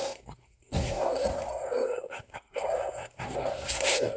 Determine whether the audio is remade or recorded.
remade